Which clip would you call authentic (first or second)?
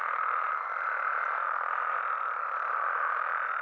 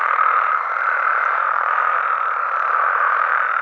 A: first